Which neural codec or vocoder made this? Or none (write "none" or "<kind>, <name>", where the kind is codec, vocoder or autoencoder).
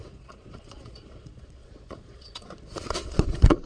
vocoder, Vocos